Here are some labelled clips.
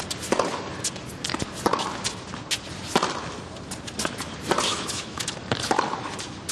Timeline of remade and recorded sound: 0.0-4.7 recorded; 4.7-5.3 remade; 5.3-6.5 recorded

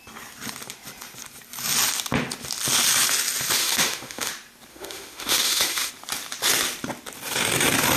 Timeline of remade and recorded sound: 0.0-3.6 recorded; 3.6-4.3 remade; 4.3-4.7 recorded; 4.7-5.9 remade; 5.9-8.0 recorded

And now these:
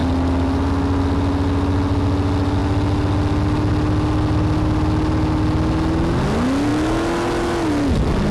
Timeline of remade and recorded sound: 0.0-8.3 recorded

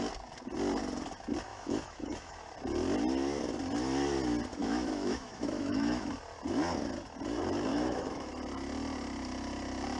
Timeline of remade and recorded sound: 0.0-1.5 recorded; 1.5-2.4 remade; 2.4-4.6 recorded; 4.6-6.1 remade; 6.1-7.7 recorded; 7.7-8.3 remade; 8.3-10.0 recorded

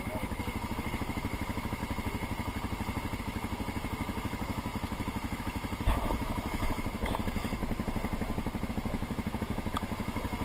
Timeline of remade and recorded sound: 0.0-1.8 remade; 1.8-3.2 recorded; 3.2-7.6 remade; 7.6-8.7 recorded; 8.7-10.4 remade